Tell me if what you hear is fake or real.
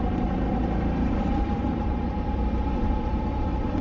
fake